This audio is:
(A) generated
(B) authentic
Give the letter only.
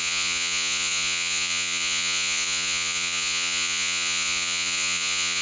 A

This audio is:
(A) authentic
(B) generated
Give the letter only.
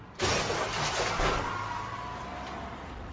A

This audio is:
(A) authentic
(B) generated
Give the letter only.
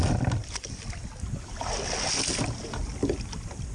A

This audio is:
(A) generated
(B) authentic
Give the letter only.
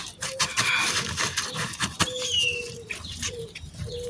A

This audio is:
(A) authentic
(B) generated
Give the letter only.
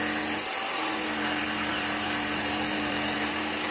A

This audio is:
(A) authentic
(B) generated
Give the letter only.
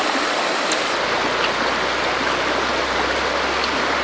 A